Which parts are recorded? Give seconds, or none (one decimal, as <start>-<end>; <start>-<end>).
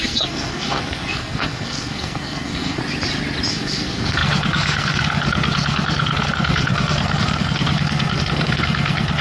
2.8-3.5